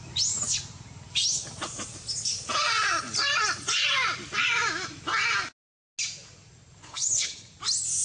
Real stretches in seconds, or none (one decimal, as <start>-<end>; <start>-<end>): 0.0-6.8; 7.5-8.0